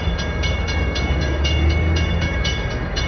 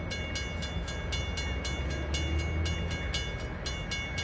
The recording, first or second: second